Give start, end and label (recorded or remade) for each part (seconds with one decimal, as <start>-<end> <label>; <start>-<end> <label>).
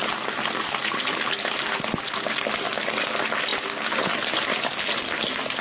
0.0-5.6 recorded